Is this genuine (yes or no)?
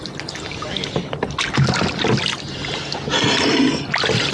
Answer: yes